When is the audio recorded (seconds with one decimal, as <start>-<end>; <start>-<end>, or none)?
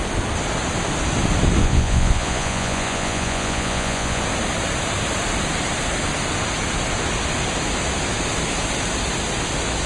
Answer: 0.0-1.6; 4.2-9.9